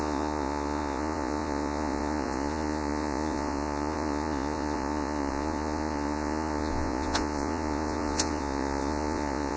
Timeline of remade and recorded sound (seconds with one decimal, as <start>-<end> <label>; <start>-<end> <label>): 0.0-9.6 remade